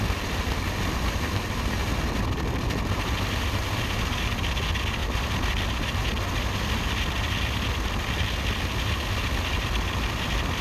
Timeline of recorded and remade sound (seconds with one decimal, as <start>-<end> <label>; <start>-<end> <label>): 0.0-10.6 recorded